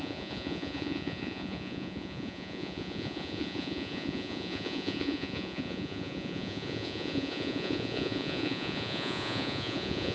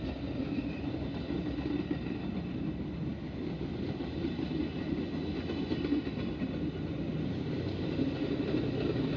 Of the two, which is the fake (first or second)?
first